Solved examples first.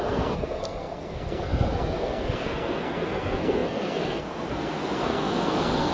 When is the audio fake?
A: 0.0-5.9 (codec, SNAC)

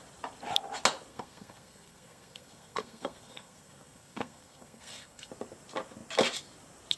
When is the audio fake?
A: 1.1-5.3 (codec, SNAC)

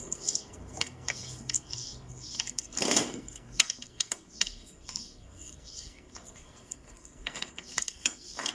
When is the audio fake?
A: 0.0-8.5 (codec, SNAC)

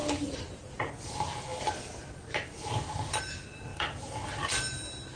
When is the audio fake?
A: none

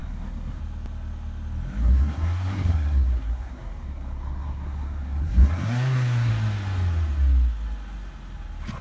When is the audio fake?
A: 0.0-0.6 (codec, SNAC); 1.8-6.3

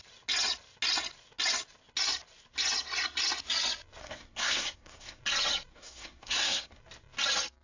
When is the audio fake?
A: 4.0-5.2 (codec, SNAC); 5.7-6.8